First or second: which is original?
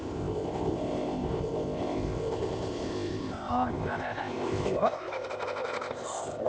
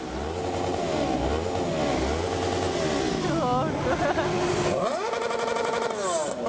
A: second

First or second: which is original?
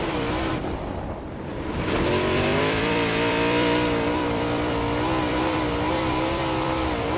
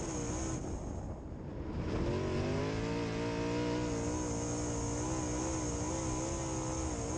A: second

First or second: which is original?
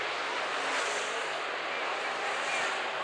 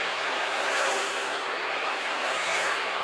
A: first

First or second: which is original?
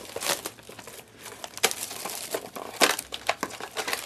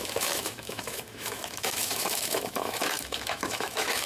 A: first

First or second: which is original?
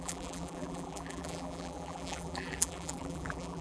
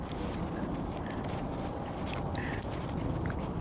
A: second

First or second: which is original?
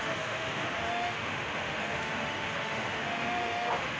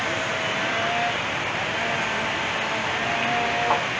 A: second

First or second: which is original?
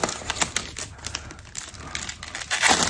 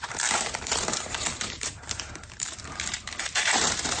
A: first